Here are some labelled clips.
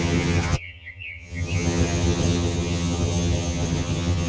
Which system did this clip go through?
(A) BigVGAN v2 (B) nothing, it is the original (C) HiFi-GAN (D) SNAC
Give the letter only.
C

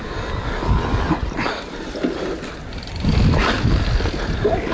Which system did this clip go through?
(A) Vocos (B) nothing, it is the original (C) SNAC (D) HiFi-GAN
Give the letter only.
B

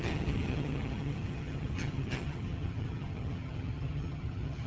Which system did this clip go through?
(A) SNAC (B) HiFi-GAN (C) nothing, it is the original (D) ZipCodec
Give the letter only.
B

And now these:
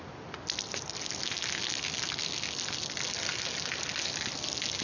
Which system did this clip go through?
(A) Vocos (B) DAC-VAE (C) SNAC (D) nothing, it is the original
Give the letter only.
D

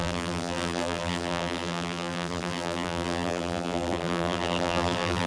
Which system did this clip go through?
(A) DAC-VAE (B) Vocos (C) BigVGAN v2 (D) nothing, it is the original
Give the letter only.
C